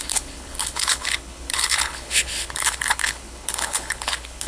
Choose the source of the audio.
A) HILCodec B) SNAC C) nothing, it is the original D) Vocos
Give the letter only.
A